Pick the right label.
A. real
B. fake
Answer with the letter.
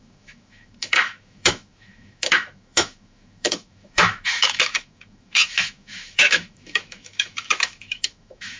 B